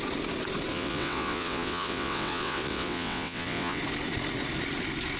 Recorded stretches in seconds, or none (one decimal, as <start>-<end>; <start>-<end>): 0.0-0.7; 3.8-5.2